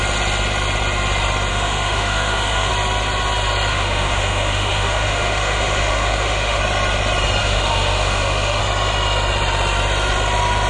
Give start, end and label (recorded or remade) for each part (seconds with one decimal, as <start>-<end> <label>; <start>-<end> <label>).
0.0-1.5 recorded; 1.5-2.7 remade; 2.7-3.7 recorded; 3.7-6.6 remade; 6.6-7.4 recorded; 7.4-8.6 remade; 8.6-10.7 recorded